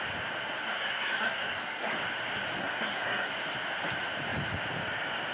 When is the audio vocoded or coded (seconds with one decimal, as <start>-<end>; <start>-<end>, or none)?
0.6-1.9; 2.6-3.3